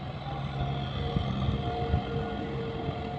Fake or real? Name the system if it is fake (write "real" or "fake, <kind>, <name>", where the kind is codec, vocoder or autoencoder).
real